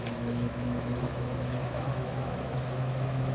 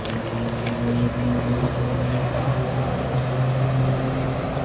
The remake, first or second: first